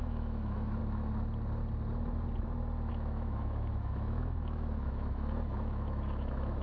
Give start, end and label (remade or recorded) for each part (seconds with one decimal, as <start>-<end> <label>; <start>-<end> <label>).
0.0-0.8 remade; 0.8-2.9 recorded; 2.9-6.6 remade